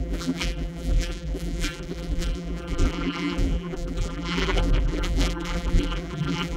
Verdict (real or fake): fake